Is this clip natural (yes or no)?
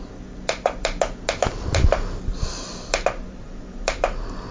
yes